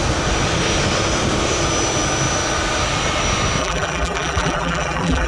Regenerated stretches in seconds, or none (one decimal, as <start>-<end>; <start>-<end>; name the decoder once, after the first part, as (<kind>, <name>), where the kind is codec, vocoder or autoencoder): 3.6-5.3 (vocoder, BigVGAN v2)